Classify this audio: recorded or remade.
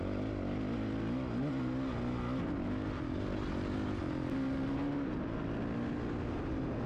recorded